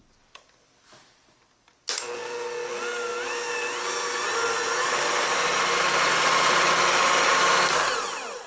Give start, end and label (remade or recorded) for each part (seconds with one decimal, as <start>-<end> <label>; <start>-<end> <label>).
0.0-6.1 recorded; 6.1-6.8 remade; 6.8-8.5 recorded